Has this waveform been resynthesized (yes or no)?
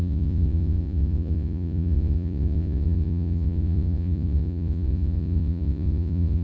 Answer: yes